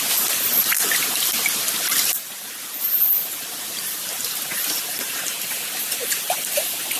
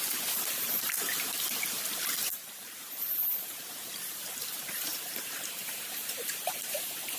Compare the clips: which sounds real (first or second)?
first